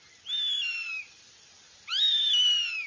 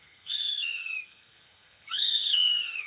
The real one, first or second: first